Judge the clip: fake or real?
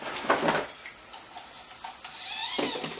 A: real